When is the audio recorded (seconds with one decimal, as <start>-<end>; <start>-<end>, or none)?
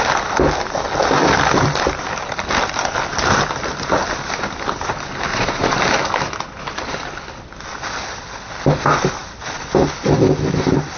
0.0-5.3; 5.8-11.0